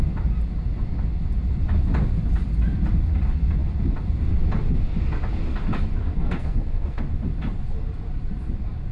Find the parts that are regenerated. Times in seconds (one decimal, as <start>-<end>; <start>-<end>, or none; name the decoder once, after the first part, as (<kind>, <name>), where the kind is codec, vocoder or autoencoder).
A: 6.0-7.0 (codec, SNAC)